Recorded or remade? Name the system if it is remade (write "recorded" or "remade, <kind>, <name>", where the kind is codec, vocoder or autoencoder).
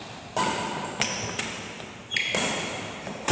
recorded